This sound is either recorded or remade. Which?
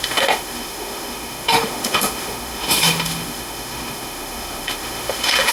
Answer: remade